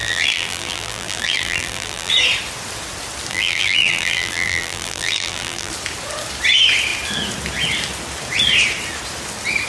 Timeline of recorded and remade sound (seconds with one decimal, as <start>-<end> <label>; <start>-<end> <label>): 0.0-2.1 remade; 2.1-3.3 recorded; 3.3-5.7 remade; 5.7-9.7 recorded